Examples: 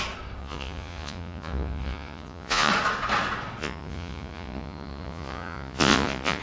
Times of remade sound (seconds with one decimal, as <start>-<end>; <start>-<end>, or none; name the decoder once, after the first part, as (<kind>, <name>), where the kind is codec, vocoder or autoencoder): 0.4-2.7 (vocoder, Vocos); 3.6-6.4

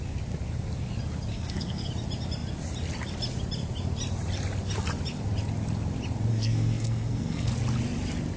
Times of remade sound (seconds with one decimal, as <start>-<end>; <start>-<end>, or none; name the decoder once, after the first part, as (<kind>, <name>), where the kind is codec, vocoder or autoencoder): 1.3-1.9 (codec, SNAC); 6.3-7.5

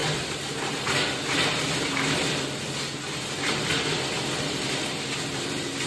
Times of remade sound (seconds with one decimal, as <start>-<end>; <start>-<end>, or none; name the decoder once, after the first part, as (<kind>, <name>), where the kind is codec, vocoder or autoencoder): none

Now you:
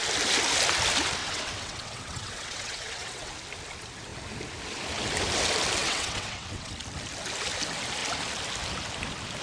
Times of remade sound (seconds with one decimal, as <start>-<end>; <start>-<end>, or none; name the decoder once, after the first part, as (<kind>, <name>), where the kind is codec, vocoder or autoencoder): 1.2-3.3 (vocoder, WaveNeXt); 5.8-6.7

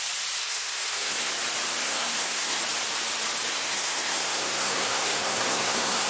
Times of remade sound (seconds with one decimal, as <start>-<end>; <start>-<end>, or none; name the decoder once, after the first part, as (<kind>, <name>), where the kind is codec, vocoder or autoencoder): 0.4-1.3 (codec, SNAC); 1.8-2.6; 3.5-6.1

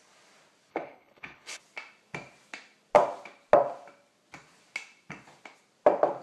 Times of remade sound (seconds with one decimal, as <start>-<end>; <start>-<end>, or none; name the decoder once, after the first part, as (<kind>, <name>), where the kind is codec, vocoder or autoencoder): 0.7-1.6 (codec, HILCodec)

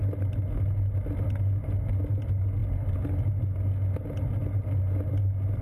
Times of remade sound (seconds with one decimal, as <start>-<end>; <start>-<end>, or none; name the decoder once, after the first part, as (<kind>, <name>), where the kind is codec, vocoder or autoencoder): none

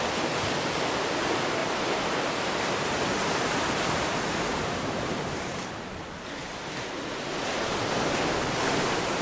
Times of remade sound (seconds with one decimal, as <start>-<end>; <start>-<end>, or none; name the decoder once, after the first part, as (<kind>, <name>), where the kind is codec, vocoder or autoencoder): 1.6-2.3 (vocoder, BigVGAN v2); 4.5-5.9